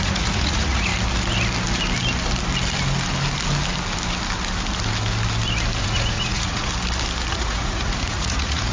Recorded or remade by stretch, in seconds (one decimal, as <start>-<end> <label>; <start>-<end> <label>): 0.0-0.9 remade; 0.9-5.8 recorded; 5.8-6.7 remade; 6.7-7.3 recorded; 7.3-8.7 remade